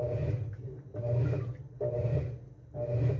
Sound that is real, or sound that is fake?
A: real